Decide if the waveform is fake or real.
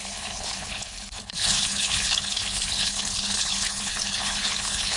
fake